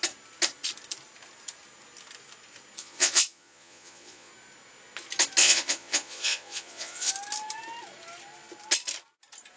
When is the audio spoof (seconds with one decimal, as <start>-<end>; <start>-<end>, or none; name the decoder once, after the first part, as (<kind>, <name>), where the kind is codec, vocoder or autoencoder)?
2.8-4.3 (vocoder, Vocos); 5.4-7.1

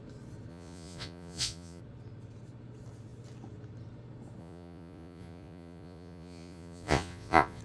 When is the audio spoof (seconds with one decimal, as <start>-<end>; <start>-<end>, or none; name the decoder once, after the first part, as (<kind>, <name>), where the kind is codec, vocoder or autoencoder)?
0.5-1.8 (vocoder, Vocos); 4.4-7.6

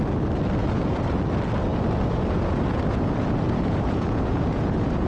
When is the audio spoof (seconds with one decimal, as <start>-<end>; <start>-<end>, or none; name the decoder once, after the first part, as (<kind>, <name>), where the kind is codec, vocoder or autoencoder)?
0.6-1.2 (vocoder, Vocos); 1.7-5.1

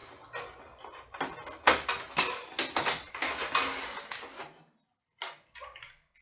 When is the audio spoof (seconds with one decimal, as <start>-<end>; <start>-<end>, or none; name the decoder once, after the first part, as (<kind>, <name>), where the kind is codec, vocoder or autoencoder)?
none